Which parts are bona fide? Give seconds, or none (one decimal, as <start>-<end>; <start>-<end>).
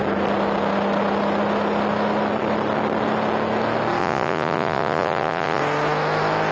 0.0-4.0; 5.6-6.5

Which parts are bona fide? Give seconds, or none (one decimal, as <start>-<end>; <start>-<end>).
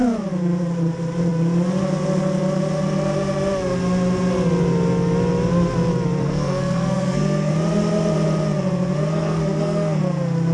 0.0-6.2; 7.5-9.0; 10.0-10.5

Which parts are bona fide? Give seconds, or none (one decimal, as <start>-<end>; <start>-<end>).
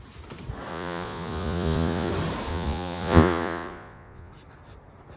0.0-0.7; 2.1-2.5; 4.3-5.2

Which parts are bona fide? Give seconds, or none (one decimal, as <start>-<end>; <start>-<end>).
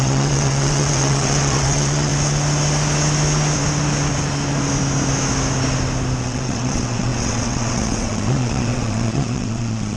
2.1-6.2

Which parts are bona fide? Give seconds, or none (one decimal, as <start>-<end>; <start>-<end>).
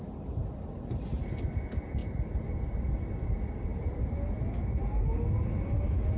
0.0-2.0; 2.9-3.7; 4.5-6.2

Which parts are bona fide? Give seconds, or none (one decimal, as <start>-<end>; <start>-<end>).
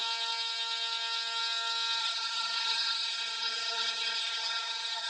0.0-2.0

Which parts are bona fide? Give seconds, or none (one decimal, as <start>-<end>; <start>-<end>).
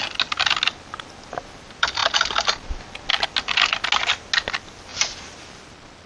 0.0-6.1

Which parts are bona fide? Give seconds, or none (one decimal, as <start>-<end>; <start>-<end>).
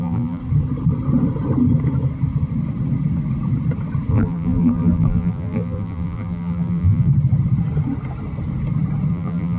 0.4-4.1; 7.1-9.1